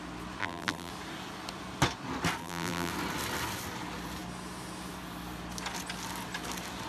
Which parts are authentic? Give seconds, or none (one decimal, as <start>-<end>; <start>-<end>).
0.0-0.4; 0.9-2.4; 2.9-6.9